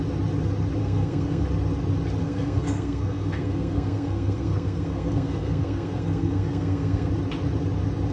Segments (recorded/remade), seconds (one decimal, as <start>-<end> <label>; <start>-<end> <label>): 0.0-0.8 recorded; 0.8-1.5 remade; 1.5-2.2 recorded; 2.2-7.1 remade; 7.1-8.1 recorded